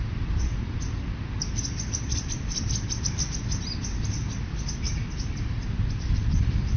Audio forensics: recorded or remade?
recorded